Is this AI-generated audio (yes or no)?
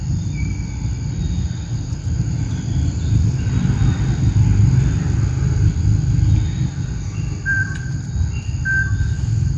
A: no